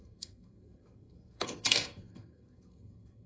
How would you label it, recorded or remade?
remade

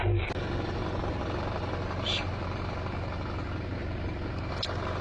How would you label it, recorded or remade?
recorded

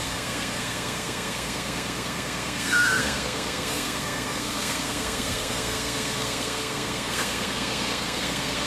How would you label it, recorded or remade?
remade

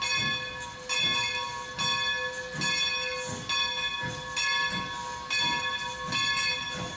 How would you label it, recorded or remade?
recorded